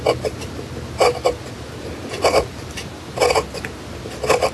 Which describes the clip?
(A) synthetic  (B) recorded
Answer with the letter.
B